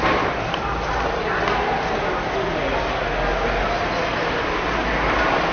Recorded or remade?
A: recorded